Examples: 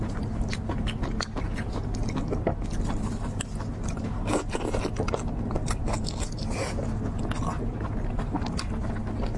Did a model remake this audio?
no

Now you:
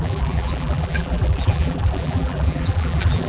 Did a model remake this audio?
yes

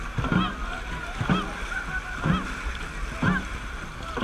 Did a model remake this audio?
no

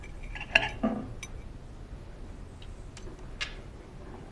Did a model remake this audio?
no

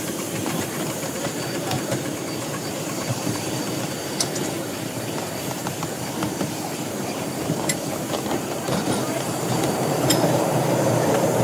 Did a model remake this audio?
yes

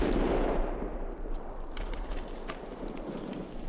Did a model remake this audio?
yes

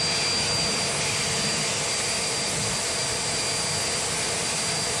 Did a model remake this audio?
no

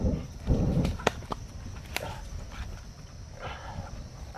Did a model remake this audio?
yes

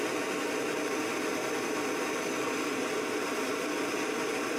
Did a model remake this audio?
no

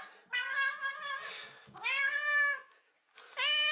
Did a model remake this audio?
no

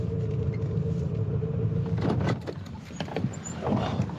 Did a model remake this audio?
yes